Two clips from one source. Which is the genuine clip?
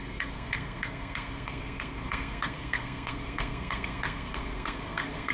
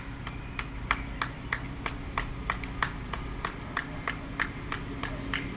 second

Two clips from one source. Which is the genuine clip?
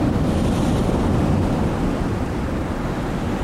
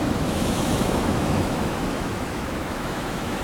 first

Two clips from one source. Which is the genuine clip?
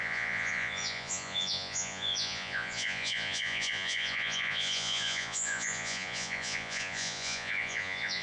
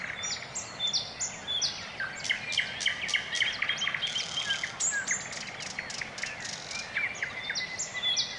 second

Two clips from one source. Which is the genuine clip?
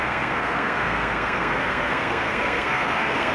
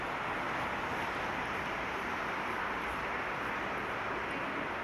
second